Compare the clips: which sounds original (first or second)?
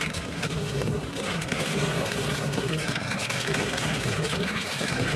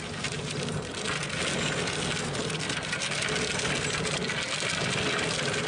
second